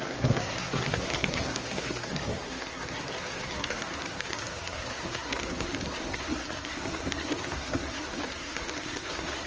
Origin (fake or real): fake